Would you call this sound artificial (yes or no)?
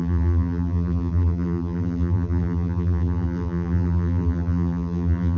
yes